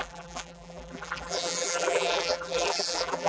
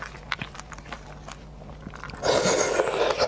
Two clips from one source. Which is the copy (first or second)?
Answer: first